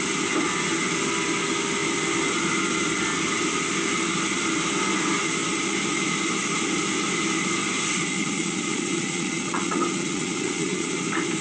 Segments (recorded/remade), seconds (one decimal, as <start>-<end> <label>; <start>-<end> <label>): 0.0-8.2 recorded; 8.2-11.0 remade; 11.0-11.4 recorded